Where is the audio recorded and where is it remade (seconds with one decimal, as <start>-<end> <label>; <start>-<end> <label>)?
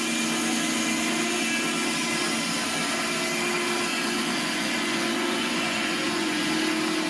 0.0-3.9 recorded; 3.9-6.5 remade; 6.5-7.1 recorded